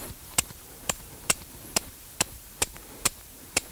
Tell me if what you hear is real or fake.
fake